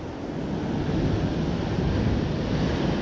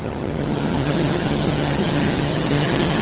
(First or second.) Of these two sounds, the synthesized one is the second